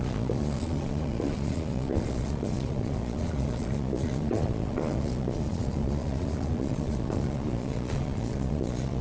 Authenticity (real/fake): fake